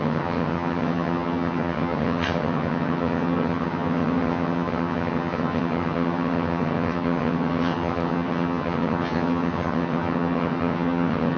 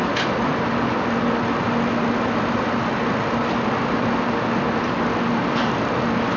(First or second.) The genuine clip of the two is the second